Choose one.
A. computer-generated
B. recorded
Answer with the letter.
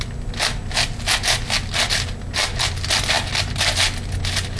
B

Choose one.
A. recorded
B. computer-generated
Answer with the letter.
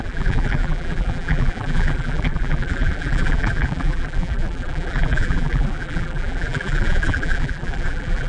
B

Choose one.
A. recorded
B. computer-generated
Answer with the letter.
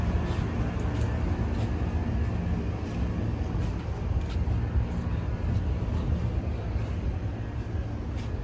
A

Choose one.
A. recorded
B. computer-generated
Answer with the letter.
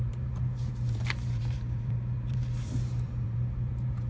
B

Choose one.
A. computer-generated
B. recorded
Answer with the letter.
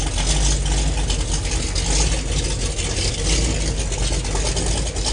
B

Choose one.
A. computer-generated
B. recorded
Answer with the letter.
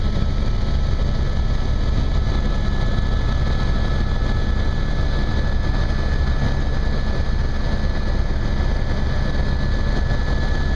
B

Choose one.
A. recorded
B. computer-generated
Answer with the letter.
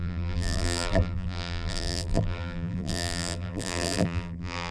B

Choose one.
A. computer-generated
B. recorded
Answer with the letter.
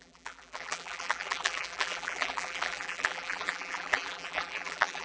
A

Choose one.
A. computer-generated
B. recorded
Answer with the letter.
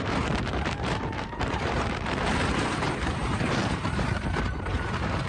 A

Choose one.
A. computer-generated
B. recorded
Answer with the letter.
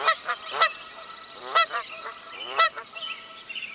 A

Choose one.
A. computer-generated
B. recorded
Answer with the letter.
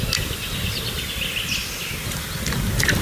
B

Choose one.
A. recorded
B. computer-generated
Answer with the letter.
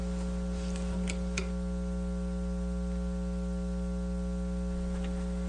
A